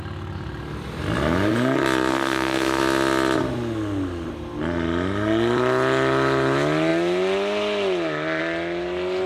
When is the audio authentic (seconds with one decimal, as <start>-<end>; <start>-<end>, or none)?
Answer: 0.0-2.1; 2.8-9.3